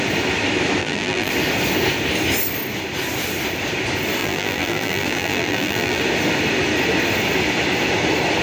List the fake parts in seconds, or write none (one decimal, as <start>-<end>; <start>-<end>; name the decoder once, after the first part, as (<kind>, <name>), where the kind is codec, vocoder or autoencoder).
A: 0.8-1.3 (vocoder, BigVGAN v2); 4.2-6.0